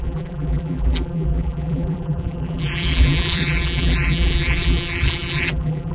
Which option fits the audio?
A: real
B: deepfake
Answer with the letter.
B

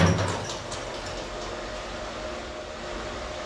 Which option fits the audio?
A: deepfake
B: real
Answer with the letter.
B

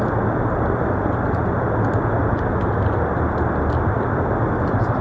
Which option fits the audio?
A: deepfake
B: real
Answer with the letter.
B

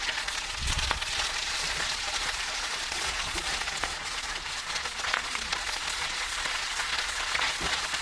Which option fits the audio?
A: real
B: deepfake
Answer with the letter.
B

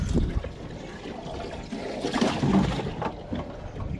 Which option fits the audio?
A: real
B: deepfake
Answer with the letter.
A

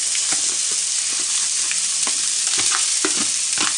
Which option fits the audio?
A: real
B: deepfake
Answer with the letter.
A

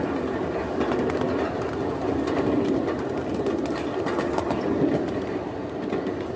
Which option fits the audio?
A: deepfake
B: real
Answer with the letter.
B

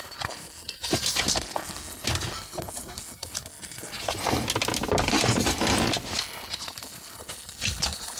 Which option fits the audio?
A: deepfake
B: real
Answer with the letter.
B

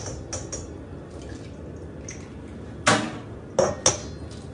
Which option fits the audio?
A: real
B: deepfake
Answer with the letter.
A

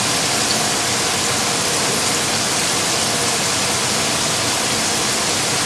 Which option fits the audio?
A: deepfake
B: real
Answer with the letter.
B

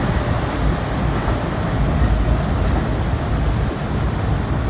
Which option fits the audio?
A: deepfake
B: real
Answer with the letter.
B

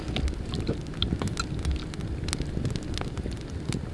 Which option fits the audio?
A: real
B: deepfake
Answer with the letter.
A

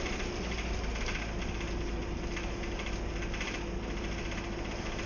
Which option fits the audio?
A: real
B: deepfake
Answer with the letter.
A